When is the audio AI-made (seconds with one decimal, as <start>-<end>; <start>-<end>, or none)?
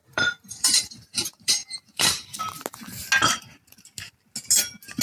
0.0-2.4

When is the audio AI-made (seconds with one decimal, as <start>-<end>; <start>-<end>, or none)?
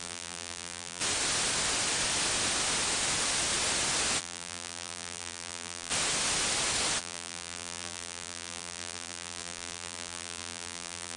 0.0-1.0; 4.2-5.9; 7.0-11.2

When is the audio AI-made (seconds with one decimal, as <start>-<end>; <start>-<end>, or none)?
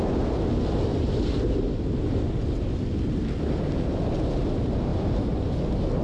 4.9-5.6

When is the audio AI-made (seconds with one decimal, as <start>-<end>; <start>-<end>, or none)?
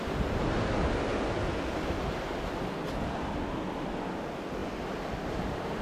none